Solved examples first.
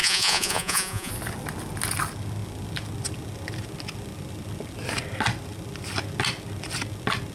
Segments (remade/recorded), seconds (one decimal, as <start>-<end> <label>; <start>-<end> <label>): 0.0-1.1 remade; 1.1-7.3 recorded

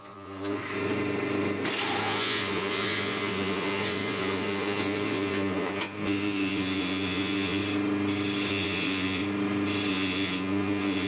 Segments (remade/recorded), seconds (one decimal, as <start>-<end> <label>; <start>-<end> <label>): 0.0-0.6 remade; 0.6-2.0 recorded; 2.0-7.6 remade; 7.6-8.5 recorded; 8.5-9.2 remade; 9.2-9.9 recorded; 9.9-11.1 remade

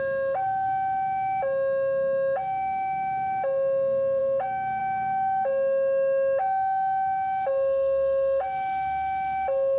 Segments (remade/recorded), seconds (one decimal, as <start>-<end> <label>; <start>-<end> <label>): 0.0-9.8 recorded

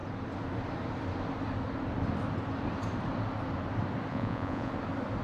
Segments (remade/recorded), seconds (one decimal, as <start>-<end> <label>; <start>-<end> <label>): 0.0-4.1 recorded; 4.1-4.7 remade; 4.7-5.2 recorded

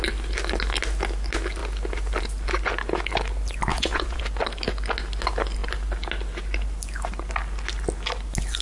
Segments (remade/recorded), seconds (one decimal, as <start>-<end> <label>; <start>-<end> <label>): 0.0-3.7 recorded; 3.7-4.2 remade; 4.2-8.6 recorded